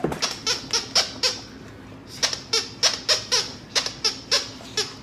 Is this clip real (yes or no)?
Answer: yes